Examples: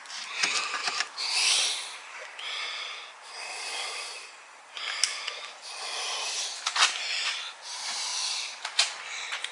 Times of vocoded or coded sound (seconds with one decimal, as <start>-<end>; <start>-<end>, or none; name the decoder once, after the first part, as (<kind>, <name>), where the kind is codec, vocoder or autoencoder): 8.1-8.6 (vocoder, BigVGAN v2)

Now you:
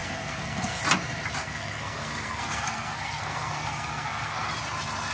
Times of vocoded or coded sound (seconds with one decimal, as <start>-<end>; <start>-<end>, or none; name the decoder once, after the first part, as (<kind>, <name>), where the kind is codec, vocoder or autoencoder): 0.0-0.8 (codec, SNAC); 1.4-4.5

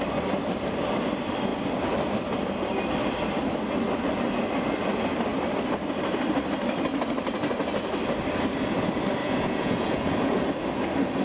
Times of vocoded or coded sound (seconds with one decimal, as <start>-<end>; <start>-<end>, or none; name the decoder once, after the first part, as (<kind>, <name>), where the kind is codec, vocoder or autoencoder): 9.2-10.4 (vocoder, Vocos)

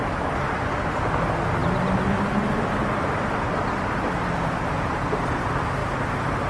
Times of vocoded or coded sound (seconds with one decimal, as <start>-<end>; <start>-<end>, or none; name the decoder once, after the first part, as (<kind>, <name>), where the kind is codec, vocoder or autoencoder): none

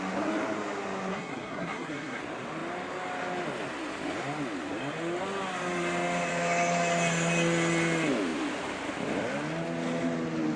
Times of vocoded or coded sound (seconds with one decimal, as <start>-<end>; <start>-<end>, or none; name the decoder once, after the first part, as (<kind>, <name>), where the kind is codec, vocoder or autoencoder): 1.1-2.2 (codec, SNAC)

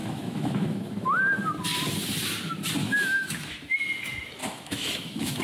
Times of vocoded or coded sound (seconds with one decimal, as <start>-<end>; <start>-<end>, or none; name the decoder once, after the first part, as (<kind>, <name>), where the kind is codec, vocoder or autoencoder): 0.0-1.2 (autoencoder, DAC-VAE); 2.8-3.5; 4.4-5.4

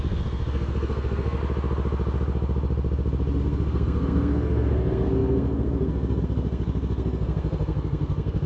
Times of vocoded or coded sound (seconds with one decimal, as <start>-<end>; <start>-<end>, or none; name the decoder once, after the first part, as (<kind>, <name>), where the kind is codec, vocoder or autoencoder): 0.0-1.4 (codec, SNAC); 3.4-8.5

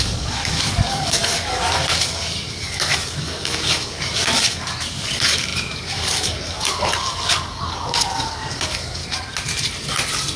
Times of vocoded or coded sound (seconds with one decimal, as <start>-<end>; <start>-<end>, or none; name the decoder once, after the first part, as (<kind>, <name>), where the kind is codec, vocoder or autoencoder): 0.0-9.0 (codec, DAC)